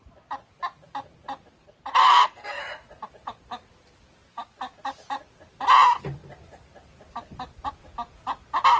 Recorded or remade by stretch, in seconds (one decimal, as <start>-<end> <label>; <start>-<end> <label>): 0.0-2.0 recorded; 2.0-2.6 remade; 2.6-8.8 recorded